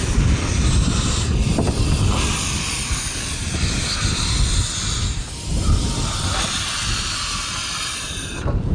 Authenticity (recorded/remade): recorded